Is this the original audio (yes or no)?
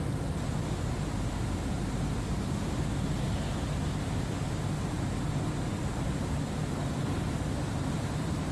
yes